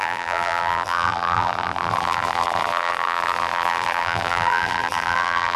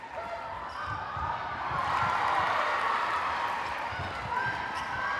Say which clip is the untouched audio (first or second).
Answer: second